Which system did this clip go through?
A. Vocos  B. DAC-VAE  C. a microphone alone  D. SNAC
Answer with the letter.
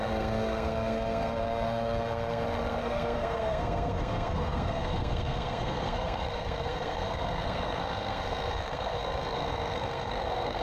D